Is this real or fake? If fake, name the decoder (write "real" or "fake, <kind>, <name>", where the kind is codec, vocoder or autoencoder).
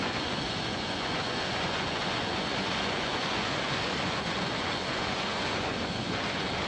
fake, vocoder, Vocos